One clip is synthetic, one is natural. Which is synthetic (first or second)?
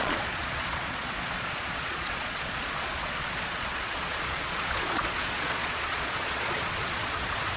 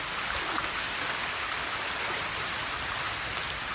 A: first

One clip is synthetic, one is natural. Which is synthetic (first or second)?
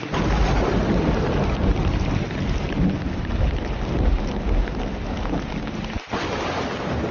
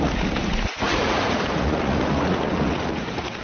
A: second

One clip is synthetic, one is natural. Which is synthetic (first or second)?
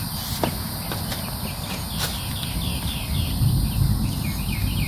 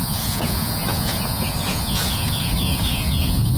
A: second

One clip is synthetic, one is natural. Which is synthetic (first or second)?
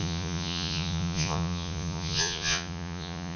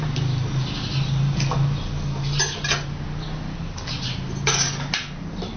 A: first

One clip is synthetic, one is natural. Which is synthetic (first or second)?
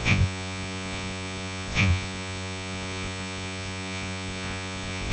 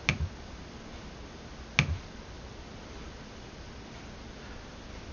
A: first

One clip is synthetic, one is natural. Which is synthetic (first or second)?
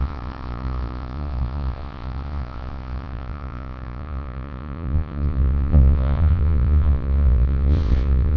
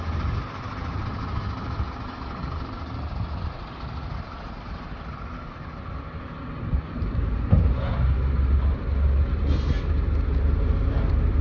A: first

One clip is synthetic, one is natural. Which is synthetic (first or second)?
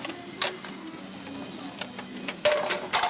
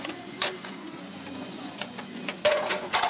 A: second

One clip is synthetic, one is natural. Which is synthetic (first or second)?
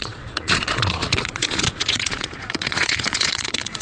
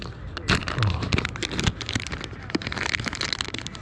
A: first